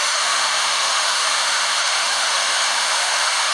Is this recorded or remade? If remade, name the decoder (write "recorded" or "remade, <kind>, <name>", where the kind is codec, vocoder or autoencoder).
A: remade, autoencoder, DAC-VAE